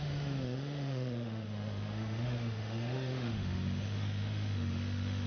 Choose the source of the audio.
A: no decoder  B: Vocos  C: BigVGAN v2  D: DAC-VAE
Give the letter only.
D